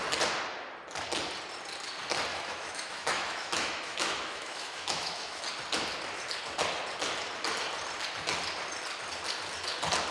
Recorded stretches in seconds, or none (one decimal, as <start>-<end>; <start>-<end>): 0.0-2.3; 5.4-10.1